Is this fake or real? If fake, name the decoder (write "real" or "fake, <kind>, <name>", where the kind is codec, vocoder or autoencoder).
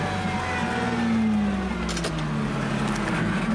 real